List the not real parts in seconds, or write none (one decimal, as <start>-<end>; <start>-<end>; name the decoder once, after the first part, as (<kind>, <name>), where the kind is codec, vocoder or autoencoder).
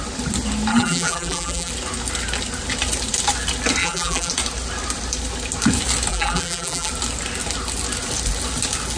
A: 0.7-1.7 (vocoder, BigVGAN v2); 3.8-4.3; 6.1-6.9